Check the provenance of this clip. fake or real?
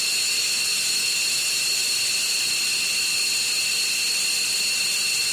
real